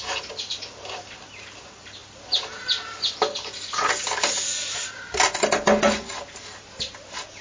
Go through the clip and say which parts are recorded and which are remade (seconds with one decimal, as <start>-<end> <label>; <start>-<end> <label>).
0.0-7.4 recorded